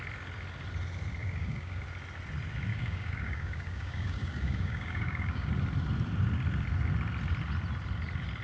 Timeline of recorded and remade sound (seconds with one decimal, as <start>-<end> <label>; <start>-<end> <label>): 0.0-1.2 recorded; 1.2-1.8 remade; 1.8-2.7 recorded; 2.7-5.5 remade; 5.5-8.4 recorded